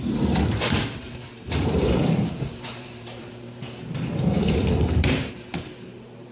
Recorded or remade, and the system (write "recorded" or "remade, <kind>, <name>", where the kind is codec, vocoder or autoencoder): remade, vocoder, BigVGAN v2